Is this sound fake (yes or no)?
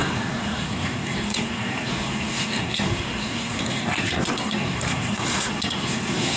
yes